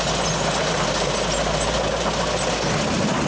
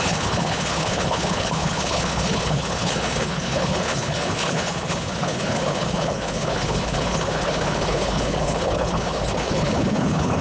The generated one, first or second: second